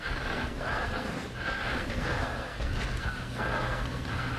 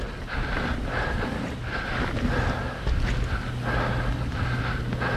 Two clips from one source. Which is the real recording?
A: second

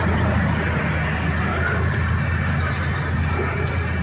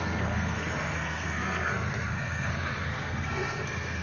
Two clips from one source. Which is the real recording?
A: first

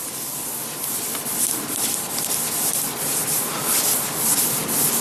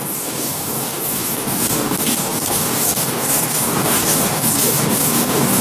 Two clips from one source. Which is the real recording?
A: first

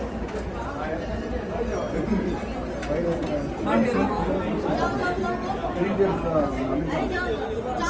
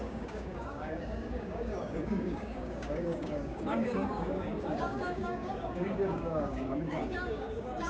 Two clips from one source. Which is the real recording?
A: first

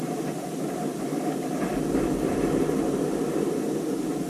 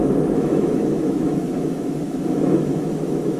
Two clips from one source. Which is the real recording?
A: first